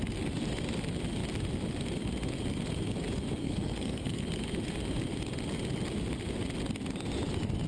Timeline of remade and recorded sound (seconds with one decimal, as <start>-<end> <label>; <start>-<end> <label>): 0.0-3.4 recorded; 3.4-4.2 remade; 4.2-7.7 recorded